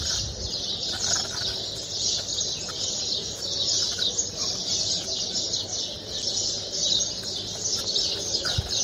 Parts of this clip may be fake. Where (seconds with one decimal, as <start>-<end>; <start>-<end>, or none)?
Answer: none